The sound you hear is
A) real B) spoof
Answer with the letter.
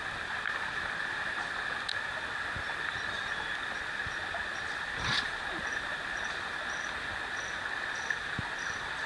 A